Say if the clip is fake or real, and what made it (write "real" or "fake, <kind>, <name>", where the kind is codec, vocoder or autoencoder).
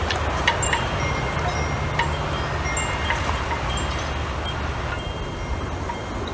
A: real